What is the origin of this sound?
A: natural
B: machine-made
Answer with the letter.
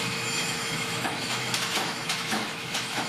B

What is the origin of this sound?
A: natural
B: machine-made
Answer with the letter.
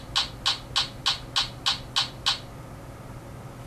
A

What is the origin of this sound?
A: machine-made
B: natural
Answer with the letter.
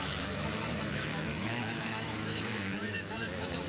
A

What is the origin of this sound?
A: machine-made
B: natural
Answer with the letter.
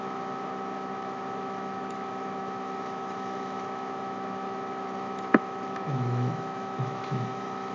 A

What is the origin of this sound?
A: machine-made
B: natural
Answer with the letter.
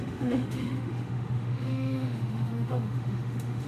A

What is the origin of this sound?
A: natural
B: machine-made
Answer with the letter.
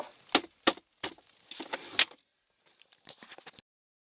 A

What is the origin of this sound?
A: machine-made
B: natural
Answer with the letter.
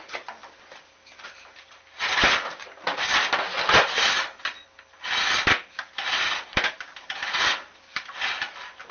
B